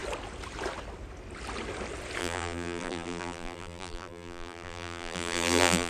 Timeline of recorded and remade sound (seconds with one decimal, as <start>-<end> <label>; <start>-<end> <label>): 0.0-2.2 recorded; 2.2-5.9 remade